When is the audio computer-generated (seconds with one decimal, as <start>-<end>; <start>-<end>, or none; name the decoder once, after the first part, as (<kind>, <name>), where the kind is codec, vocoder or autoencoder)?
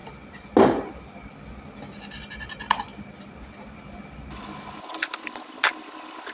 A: none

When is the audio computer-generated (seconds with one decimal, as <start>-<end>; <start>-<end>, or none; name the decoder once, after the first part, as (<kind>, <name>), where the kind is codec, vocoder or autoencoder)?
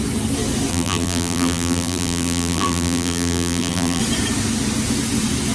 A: 0.7-4.0 (vocoder, BigVGAN v2)